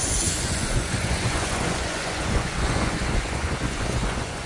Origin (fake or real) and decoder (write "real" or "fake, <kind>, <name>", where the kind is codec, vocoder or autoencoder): fake, vocoder, Vocos